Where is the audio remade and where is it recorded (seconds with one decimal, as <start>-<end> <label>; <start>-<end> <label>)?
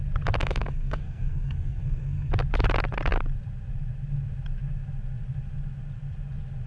0.0-0.4 recorded; 0.4-2.3 remade; 2.3-6.7 recorded